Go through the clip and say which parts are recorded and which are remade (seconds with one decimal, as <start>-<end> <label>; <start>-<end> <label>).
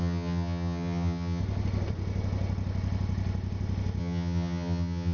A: 0.0-1.4 remade; 1.4-4.0 recorded; 4.0-5.1 remade